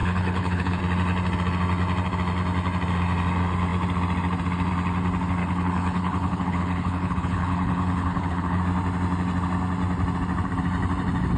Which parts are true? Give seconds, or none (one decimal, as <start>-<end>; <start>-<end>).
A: 0.8-5.4; 8.6-11.4